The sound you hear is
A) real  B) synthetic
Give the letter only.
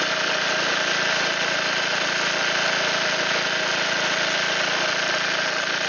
A